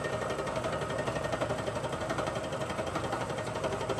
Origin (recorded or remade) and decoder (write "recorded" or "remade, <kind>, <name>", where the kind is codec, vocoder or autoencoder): remade, vocoder, BigVGAN v2